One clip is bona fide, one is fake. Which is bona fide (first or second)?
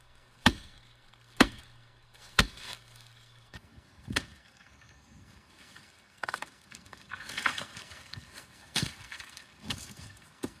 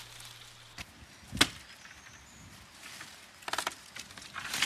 second